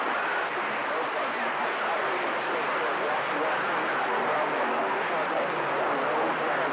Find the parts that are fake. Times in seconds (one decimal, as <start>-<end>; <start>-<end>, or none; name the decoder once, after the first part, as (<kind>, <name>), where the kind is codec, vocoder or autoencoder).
0.8-4.8 (vocoder, BigVGAN v2)